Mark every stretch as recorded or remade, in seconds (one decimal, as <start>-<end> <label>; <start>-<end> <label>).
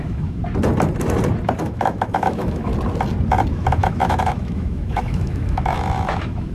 0.0-0.4 remade; 0.4-1.6 recorded; 1.6-2.7 remade; 2.7-3.5 recorded; 3.5-6.5 remade